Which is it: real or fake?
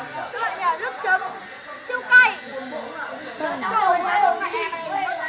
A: real